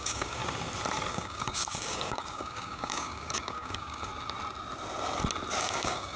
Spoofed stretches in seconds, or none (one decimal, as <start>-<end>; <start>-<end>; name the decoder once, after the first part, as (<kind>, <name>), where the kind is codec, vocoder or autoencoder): 0.0-0.4 (codec, DAC); 1.1-4.1; 5.6-6.2